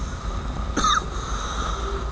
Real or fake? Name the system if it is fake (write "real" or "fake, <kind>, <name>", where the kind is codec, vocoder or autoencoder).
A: real